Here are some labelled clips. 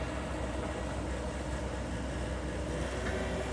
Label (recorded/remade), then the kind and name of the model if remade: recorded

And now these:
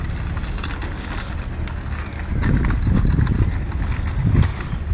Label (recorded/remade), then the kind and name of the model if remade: recorded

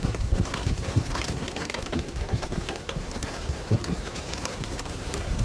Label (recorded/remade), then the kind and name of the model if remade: remade, codec, SNAC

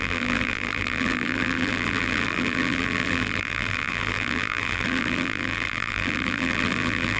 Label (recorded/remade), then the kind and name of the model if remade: remade, vocoder, BigVGAN v2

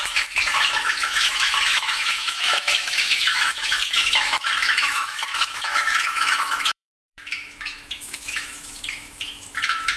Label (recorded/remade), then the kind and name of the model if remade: remade, autoencoder, DAC-VAE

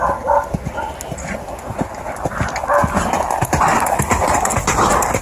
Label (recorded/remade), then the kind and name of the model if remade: recorded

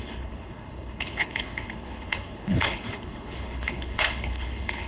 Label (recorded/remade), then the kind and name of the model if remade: remade, codec, HILCodec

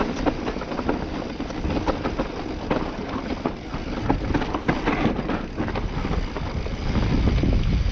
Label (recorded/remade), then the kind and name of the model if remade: recorded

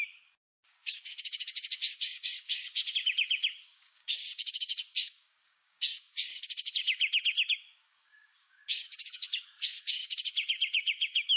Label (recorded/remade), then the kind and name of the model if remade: remade, codec, DAC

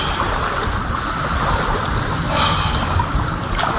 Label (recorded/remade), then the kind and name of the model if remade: recorded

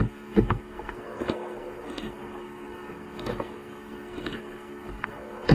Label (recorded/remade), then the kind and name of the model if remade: remade, codec, SNAC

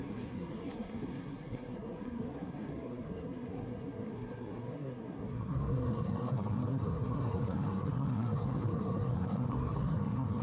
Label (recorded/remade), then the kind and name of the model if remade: remade, codec, SNAC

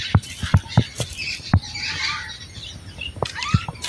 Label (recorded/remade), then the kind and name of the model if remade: recorded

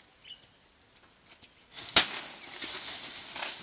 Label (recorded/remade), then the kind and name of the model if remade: recorded